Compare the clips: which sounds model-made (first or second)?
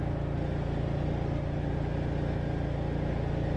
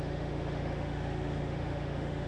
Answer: second